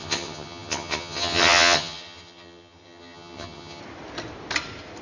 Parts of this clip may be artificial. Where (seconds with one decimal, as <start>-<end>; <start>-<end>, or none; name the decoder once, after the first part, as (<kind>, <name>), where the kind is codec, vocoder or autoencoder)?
0.0-3.8 (vocoder, HiFi-GAN)

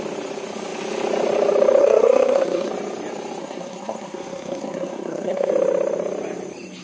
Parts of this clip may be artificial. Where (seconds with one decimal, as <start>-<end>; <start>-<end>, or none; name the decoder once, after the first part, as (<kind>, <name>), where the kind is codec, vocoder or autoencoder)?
1.8-2.7 (codec, SNAC); 3.4-5.5